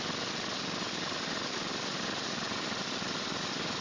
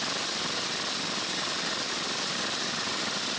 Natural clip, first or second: first